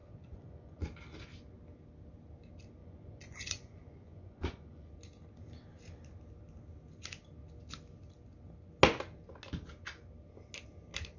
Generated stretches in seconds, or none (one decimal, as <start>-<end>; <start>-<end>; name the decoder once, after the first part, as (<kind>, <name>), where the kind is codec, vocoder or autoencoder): 0.0-0.8 (vocoder, Vocos); 2.8-4.9